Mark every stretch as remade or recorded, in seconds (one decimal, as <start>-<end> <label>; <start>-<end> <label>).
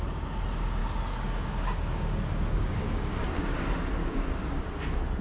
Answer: 0.0-0.8 recorded; 0.8-3.6 remade; 3.6-4.0 recorded; 4.0-4.6 remade; 4.6-5.2 recorded